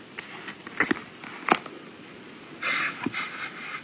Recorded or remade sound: recorded